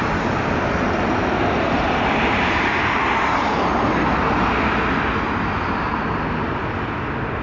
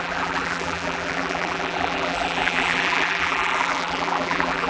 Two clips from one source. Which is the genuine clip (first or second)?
first